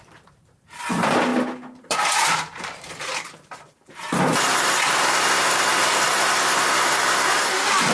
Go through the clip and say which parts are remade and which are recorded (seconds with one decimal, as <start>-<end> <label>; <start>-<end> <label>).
0.0-1.3 remade; 1.3-1.8 recorded; 1.8-7.9 remade